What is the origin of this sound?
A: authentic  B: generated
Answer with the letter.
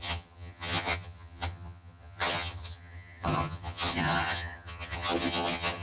B